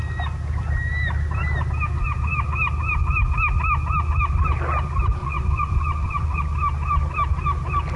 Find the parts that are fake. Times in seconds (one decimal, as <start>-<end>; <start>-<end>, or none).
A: 5.2-6.4